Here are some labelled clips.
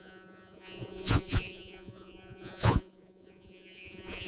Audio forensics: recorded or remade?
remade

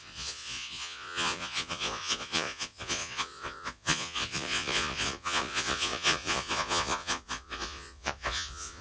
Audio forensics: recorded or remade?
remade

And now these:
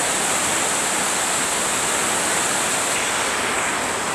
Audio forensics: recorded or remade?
recorded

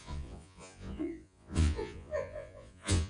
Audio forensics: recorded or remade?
remade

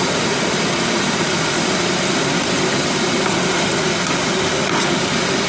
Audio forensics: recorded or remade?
recorded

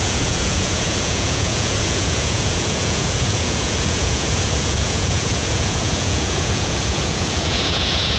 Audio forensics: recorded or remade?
remade